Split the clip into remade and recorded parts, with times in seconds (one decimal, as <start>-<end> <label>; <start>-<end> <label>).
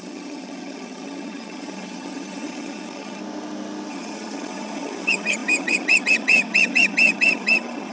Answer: 0.0-3.2 remade; 3.2-3.9 recorded; 3.9-7.9 remade